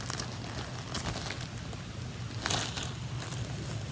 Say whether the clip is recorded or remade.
recorded